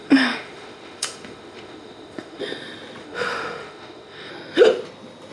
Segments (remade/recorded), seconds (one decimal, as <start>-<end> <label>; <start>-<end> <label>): 0.0-2.4 remade; 2.4-3.0 recorded; 3.0-4.3 remade; 4.3-5.3 recorded